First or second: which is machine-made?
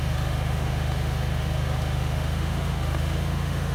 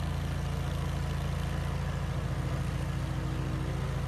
first